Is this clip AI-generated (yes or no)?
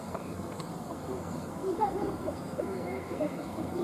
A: yes